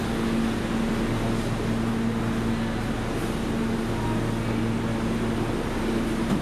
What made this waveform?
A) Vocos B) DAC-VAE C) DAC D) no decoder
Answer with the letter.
D